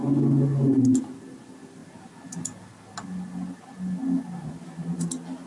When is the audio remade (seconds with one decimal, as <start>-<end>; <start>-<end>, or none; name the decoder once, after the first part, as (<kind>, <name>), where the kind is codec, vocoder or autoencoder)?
none